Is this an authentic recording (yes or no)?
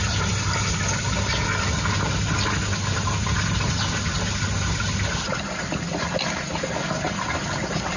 yes